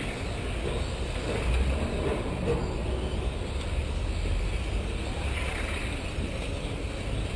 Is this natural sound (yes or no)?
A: yes